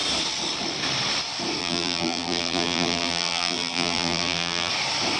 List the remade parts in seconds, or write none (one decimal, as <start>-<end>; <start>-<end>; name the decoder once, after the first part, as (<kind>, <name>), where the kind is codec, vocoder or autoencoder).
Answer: 1.6-4.7 (vocoder, BigVGAN v2)